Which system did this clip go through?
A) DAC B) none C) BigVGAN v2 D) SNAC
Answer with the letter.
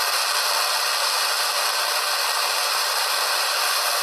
B